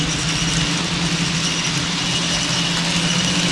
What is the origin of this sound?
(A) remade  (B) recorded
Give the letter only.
B